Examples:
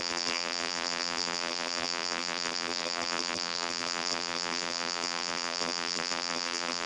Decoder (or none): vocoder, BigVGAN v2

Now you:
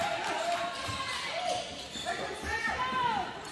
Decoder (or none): vocoder, BigVGAN v2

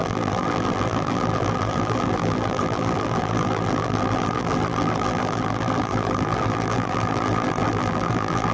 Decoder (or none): vocoder, BigVGAN v2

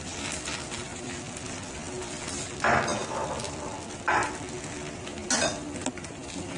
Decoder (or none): none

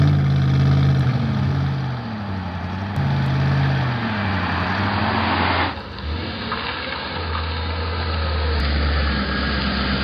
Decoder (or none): none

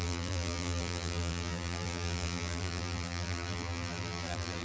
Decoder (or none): vocoder, BigVGAN v2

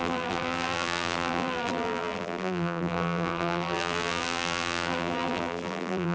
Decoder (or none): vocoder, BigVGAN v2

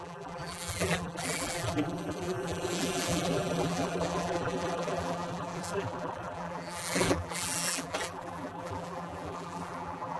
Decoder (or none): vocoder, BigVGAN v2